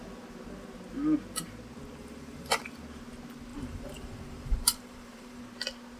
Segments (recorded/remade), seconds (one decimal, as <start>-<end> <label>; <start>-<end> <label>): 0.0-2.0 recorded; 2.0-2.6 remade; 2.6-3.5 recorded; 3.5-5.4 remade; 5.4-6.0 recorded